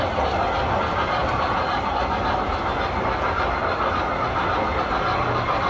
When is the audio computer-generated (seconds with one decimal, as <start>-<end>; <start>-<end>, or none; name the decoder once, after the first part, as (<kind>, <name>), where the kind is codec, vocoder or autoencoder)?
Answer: none